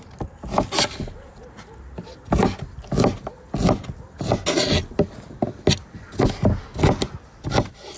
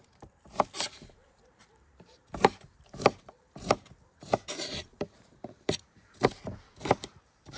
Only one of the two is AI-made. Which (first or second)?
second